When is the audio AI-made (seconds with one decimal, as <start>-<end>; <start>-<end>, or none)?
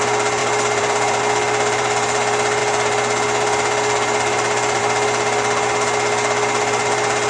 0.4-1.2